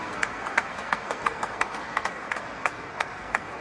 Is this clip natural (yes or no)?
no